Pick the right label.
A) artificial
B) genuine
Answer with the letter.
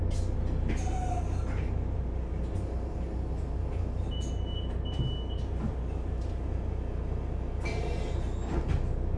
B